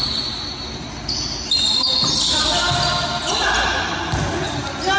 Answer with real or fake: real